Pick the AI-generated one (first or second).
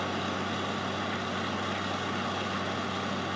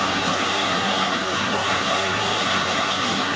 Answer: second